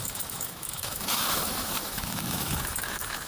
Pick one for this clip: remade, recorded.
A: remade